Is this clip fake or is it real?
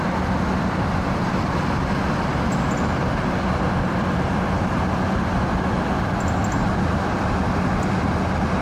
real